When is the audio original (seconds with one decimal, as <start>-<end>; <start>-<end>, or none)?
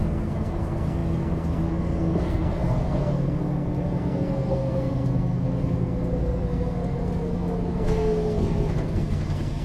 none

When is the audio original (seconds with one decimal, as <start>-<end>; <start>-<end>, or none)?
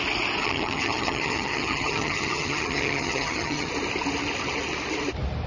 0.0-0.4; 3.7-5.5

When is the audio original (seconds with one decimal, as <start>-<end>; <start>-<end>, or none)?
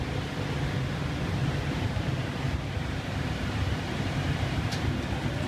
0.0-1.4; 4.7-5.5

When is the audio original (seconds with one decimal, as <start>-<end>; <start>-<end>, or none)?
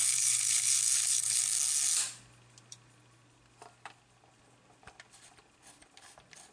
1.4-6.5